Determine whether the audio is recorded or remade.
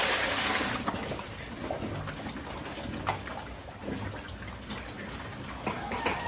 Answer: recorded